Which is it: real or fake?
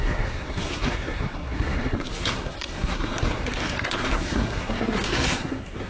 fake